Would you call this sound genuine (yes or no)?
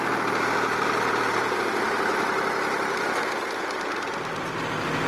yes